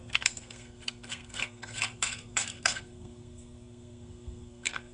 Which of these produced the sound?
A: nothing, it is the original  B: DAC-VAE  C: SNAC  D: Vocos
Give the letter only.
C